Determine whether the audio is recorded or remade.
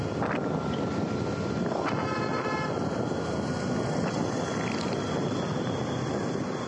recorded